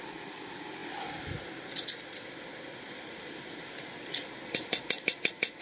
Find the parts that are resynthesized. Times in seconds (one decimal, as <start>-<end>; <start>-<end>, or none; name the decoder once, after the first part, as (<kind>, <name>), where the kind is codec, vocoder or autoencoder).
none